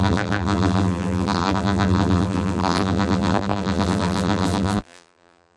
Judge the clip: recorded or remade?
remade